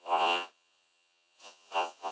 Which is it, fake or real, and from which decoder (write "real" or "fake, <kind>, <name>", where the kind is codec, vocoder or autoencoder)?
fake, vocoder, Vocos